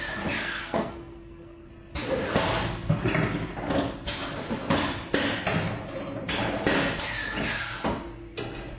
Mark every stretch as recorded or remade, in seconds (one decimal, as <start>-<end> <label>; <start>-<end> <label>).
0.0-0.4 recorded; 0.4-1.7 remade; 1.7-8.8 recorded